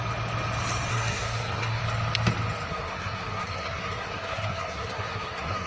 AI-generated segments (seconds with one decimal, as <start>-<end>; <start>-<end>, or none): 0.9-1.8; 2.7-5.7